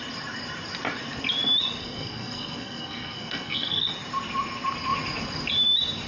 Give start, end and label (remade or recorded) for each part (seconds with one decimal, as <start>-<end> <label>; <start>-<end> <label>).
0.0-1.8 recorded; 1.8-3.9 remade; 3.9-6.1 recorded